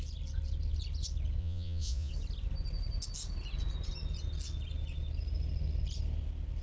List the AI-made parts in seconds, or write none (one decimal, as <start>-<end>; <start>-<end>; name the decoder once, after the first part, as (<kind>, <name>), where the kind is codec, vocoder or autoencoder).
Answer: 1.4-2.1 (vocoder, Vocos)